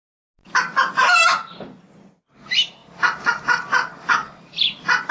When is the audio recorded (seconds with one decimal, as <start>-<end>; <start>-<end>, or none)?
0.0-0.4; 1.0-3.9; 4.5-5.1